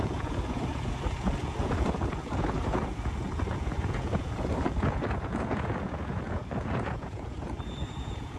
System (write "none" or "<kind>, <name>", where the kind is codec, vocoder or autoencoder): vocoder, Vocos